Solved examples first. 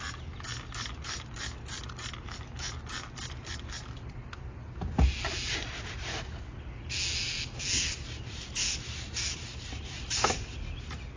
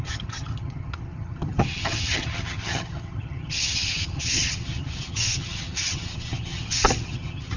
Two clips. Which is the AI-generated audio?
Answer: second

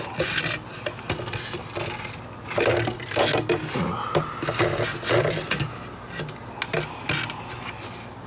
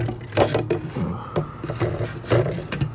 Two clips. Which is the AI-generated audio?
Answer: second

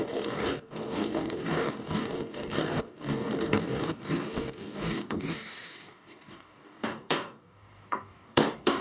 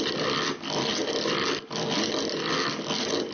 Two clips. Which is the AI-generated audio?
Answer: first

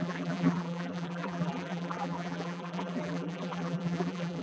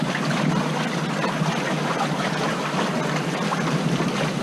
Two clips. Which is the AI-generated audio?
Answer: first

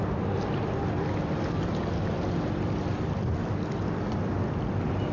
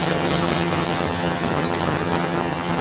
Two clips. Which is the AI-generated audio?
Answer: second